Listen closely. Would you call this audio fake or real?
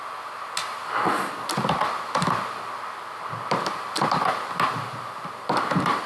real